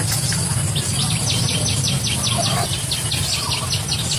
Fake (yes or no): no